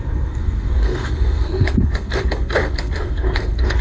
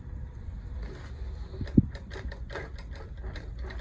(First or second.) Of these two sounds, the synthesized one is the first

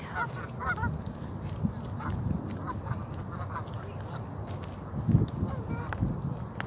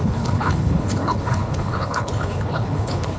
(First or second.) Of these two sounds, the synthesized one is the second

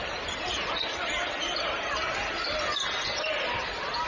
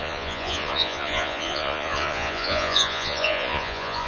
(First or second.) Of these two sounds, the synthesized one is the second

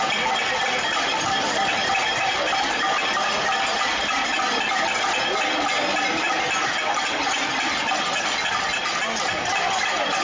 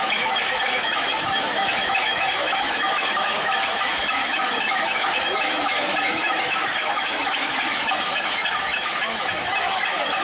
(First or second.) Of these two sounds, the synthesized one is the second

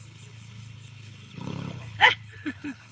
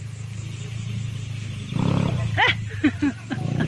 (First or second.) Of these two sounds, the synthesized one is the first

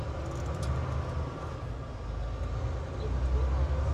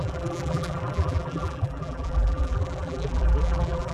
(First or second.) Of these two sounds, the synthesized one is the second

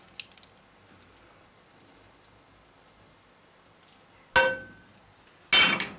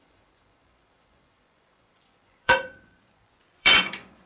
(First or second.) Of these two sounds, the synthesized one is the second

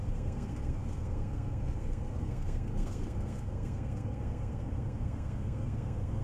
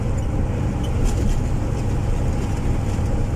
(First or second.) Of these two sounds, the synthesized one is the first